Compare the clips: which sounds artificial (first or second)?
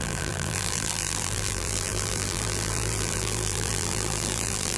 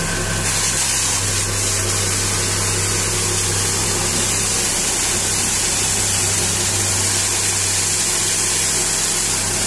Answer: first